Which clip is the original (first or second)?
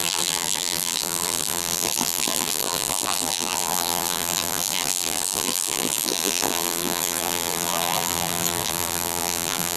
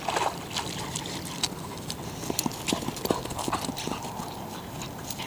second